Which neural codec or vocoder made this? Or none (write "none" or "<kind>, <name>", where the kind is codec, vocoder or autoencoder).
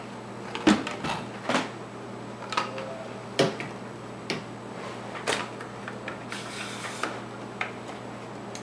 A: none